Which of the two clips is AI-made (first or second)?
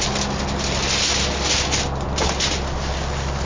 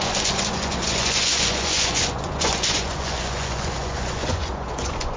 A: second